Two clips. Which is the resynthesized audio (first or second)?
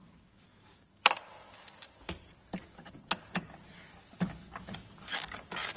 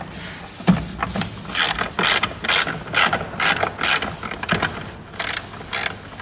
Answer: first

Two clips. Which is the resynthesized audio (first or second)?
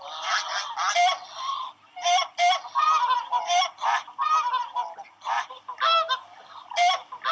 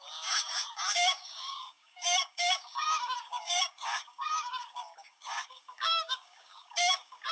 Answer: second